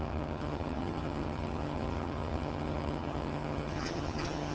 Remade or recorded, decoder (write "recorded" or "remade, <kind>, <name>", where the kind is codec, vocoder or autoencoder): remade, vocoder, HiFi-GAN